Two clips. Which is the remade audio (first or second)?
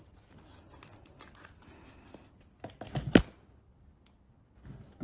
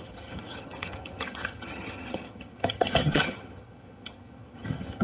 second